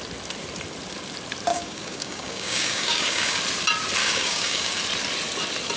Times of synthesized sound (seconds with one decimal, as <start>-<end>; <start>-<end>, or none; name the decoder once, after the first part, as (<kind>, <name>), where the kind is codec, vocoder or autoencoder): 1.5-3.4 (codec, DAC); 4.0-4.8